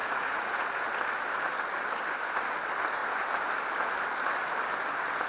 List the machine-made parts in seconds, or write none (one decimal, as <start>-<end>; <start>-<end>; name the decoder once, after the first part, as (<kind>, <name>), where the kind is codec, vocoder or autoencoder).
0.0-0.7 (vocoder, Vocos)